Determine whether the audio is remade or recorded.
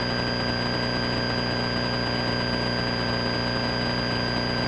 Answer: recorded